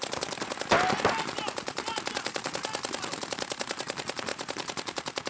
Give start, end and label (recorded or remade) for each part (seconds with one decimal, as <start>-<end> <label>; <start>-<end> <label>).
0.0-5.3 recorded